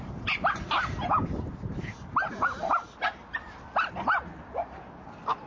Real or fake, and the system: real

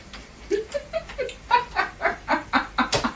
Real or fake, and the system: real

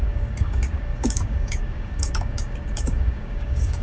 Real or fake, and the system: fake, codec, DAC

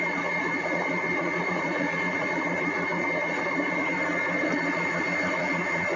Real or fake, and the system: fake, vocoder, Vocos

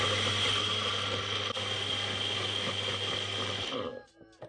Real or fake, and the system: real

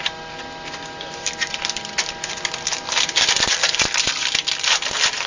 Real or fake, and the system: real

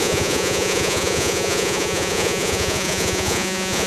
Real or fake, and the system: fake, vocoder, Vocos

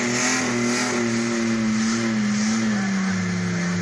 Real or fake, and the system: real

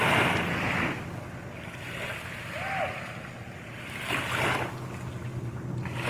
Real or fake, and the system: real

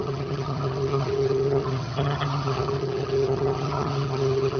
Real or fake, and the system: fake, vocoder, HiFi-GAN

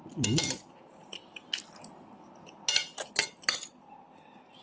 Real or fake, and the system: real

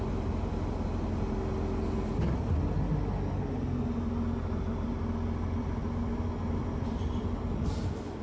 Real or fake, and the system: real